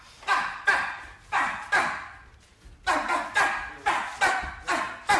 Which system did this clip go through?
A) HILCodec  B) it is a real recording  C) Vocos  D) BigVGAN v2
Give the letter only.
B